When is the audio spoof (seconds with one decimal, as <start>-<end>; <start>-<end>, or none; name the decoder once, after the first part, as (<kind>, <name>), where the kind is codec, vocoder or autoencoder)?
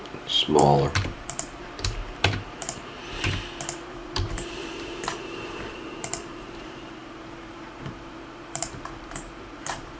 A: 0.0-10.0 (vocoder, BigVGAN v2)